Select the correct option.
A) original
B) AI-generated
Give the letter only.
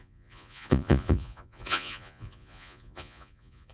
B